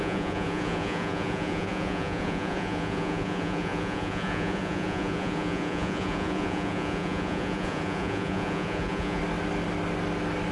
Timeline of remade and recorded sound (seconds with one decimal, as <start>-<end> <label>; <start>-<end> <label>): 0.0-9.2 remade; 9.2-10.5 recorded